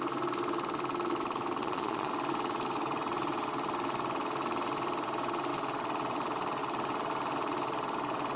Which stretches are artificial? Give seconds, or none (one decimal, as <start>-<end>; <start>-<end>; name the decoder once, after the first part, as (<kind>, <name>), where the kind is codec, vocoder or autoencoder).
1.6-2.1 (vocoder, Vocos)